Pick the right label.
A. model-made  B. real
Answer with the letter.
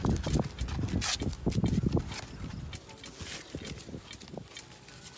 B